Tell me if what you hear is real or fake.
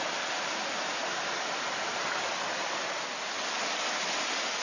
real